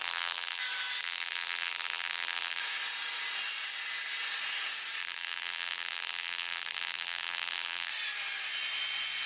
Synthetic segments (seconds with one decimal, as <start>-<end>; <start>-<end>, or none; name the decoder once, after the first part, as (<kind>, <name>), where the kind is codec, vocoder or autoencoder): 0.0-0.6 (vocoder, BigVGAN v2); 1.0-2.6; 5.0-7.9